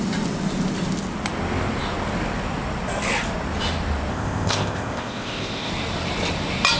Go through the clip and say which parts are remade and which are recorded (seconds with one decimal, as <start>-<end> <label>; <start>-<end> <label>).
0.0-4.1 recorded; 4.1-5.7 remade; 5.7-6.8 recorded